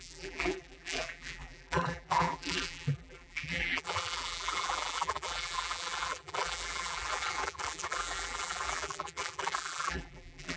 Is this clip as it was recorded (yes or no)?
no